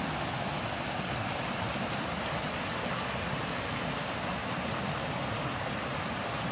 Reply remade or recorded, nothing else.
recorded